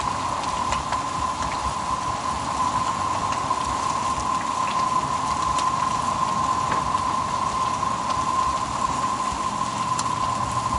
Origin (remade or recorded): recorded